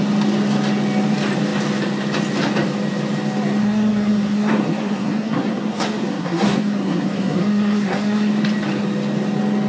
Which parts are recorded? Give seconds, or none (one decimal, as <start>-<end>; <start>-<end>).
0.0-3.6; 8.3-9.7